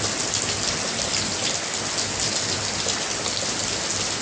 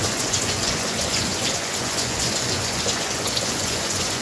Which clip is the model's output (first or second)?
second